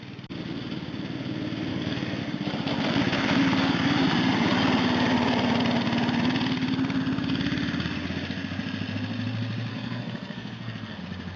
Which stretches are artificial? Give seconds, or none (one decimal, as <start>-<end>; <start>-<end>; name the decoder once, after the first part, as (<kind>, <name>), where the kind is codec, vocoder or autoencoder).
1.7-2.2 (codec, SNAC); 9.7-11.0